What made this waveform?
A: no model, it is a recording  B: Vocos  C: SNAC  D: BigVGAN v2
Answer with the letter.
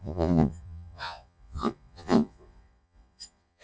B